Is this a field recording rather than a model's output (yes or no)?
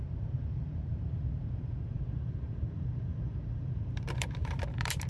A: no